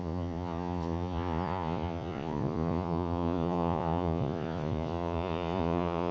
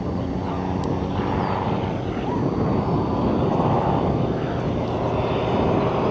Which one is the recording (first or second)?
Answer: second